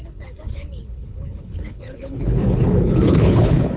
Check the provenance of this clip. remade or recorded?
remade